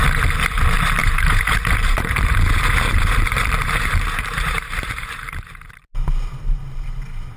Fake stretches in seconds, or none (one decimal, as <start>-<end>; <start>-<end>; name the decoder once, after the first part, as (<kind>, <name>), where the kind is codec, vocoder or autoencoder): 1.0-5.4 (vocoder, BigVGAN v2)